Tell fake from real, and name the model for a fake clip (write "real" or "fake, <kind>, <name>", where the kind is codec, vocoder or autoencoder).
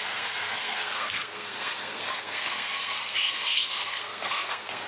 fake, codec, SNAC